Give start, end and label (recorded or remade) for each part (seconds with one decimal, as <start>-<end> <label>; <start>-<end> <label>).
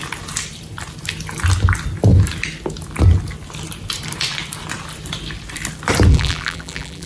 0.0-6.1 recorded; 6.1-7.1 remade